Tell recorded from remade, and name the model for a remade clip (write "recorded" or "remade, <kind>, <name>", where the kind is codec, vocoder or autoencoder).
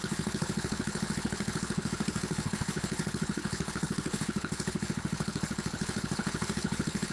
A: remade, codec, HILCodec